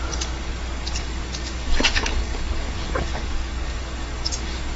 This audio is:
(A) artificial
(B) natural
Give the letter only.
A